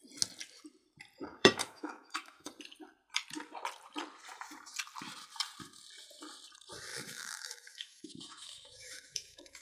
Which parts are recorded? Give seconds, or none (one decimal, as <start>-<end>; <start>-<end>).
0.0-1.3; 2.5-6.9